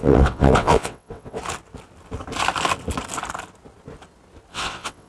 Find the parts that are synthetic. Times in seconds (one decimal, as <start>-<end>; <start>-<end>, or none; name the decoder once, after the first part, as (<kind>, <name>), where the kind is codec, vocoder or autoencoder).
0.0-1.4 (vocoder, WaveNeXt); 4.5-5.1